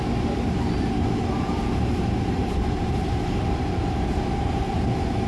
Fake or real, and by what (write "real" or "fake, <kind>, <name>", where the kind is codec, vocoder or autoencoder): fake, vocoder, BigVGAN v2